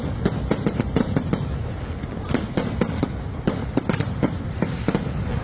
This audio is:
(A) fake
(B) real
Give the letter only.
B